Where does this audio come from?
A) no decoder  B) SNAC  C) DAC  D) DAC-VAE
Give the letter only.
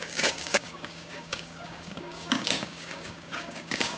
C